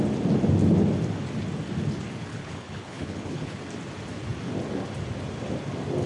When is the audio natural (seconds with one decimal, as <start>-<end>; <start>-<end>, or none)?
0.0-2.3; 3.6-6.1